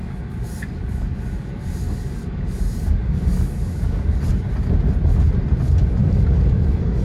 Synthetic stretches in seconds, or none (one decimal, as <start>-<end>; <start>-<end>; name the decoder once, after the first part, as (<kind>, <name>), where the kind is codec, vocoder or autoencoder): 0.0-4.2 (codec, DAC); 6.0-7.0